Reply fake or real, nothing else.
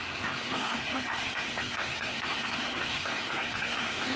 fake